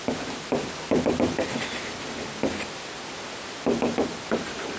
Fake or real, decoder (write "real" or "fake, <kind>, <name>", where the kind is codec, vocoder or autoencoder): real